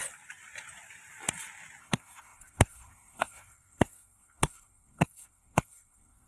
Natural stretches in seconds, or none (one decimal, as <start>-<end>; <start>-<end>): 0.0-1.8